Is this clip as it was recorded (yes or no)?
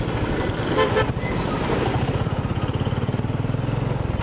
yes